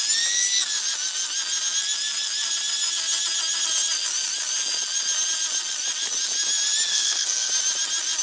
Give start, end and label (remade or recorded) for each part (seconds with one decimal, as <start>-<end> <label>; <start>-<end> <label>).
0.0-6.9 recorded; 6.9-7.5 remade; 7.5-8.2 recorded